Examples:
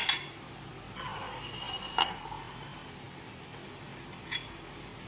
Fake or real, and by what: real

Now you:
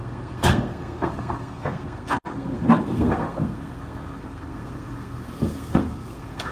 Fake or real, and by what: fake, codec, SNAC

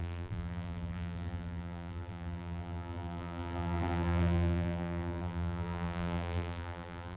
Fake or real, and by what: fake, vocoder, BigVGAN v2